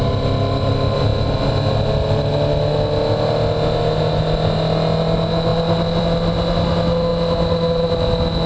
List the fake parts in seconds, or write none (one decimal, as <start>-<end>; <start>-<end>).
none